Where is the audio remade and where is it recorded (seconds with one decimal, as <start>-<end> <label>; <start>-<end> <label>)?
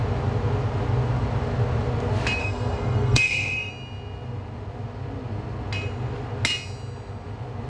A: 0.0-2.4 recorded; 2.4-3.7 remade; 3.7-7.7 recorded